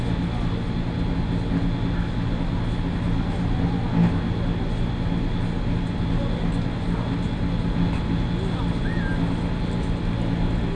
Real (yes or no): yes